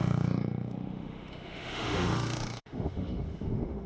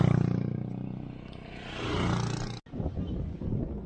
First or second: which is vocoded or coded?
first